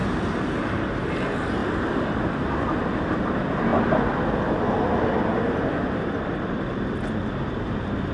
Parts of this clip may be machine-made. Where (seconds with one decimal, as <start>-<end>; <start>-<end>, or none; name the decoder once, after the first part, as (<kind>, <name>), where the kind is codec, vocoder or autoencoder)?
0.0-1.6 (vocoder, BigVGAN v2); 3.0-3.7; 7.3-8.1